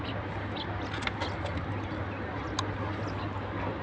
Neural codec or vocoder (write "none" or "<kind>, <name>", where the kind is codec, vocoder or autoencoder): none